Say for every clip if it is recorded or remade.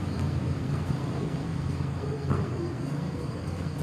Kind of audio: remade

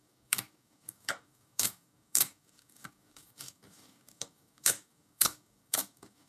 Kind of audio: remade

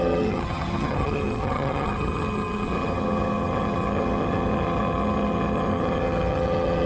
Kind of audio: remade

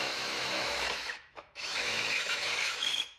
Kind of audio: remade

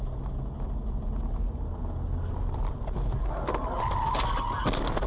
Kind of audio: recorded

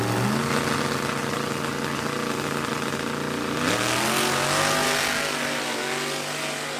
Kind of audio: recorded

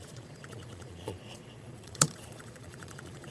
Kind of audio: remade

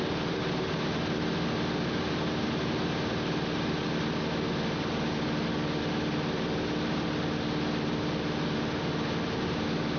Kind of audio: recorded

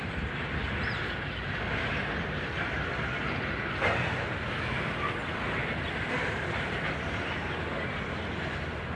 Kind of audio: recorded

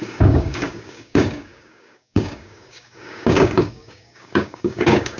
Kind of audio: remade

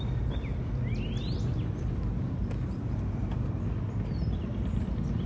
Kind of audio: recorded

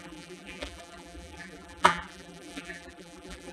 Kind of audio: remade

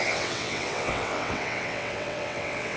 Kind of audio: remade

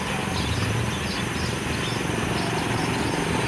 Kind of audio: recorded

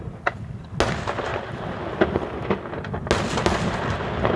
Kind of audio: recorded